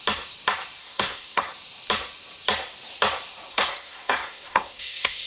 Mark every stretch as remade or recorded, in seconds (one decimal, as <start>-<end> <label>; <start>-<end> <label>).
0.0-0.8 recorded; 0.8-1.5 remade; 1.5-3.5 recorded; 3.5-5.3 remade